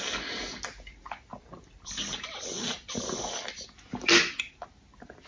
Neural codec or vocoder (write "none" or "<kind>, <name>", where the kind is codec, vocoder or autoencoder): none